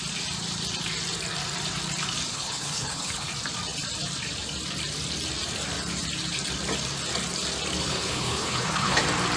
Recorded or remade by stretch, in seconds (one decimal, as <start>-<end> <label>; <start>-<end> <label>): 0.0-2.3 recorded; 2.3-3.3 remade; 3.3-7.8 recorded; 7.8-9.0 remade; 9.0-9.4 recorded